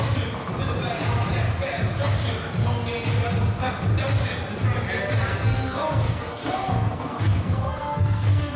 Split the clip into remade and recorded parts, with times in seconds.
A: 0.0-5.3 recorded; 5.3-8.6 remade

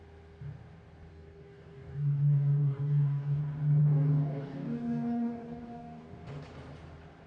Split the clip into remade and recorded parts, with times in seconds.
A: 0.0-1.1 recorded; 1.1-3.4 remade; 3.4-3.8 recorded; 3.8-6.1 remade; 6.1-7.3 recorded

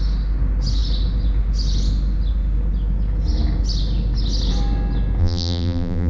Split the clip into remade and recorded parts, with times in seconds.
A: 0.0-5.2 recorded; 5.2-6.1 remade

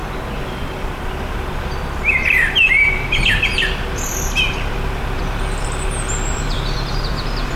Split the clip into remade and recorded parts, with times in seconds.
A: 0.0-0.5 recorded; 0.5-7.6 remade

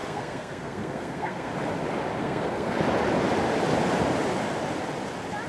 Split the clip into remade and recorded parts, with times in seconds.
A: 0.0-1.5 remade; 1.5-2.2 recorded; 2.2-2.8 remade; 2.8-5.5 recorded

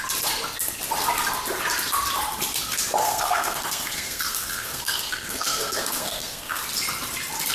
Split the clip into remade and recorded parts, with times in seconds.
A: 0.0-3.0 recorded; 3.0-6.6 remade; 6.6-7.5 recorded